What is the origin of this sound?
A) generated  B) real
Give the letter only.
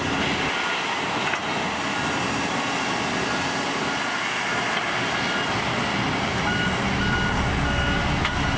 B